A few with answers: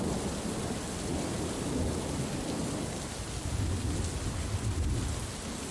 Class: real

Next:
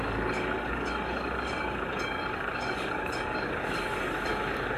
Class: fake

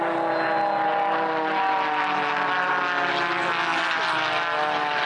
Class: real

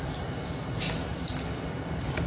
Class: real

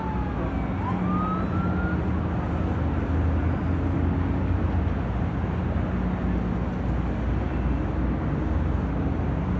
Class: real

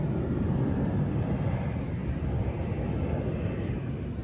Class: real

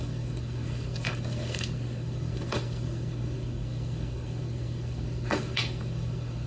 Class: fake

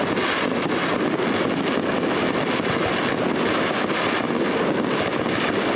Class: real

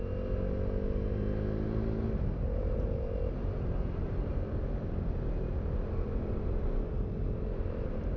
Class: real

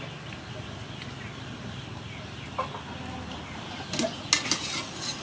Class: real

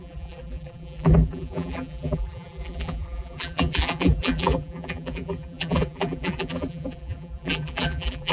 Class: fake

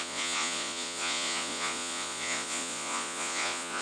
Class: fake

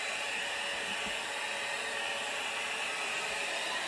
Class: real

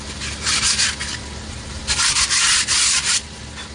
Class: real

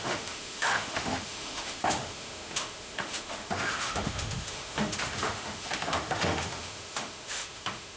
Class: fake